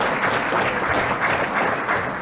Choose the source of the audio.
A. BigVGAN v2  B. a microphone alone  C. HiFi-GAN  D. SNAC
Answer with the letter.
B